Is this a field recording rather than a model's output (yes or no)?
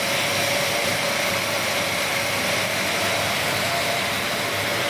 no